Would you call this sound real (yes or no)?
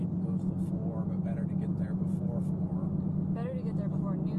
yes